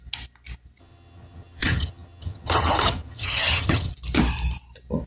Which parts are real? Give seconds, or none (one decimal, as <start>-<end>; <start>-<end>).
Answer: 0.0-0.8; 3.9-5.1